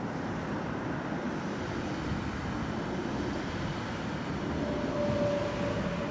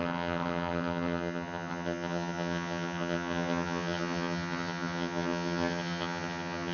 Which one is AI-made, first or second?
second